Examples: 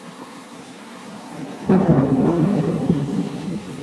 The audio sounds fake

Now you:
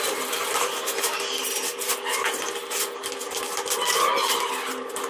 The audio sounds real